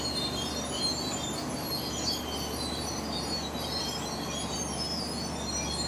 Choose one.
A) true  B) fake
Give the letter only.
A